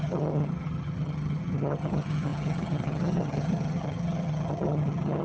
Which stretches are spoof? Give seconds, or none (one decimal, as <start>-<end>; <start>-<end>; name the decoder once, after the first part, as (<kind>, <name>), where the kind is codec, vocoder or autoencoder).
0.0-5.2 (vocoder, HiFi-GAN)